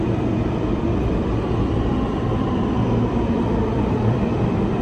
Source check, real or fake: fake